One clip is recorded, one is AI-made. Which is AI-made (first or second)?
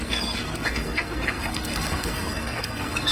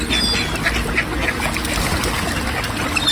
first